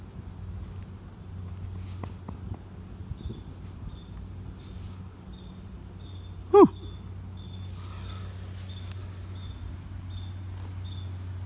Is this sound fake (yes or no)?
no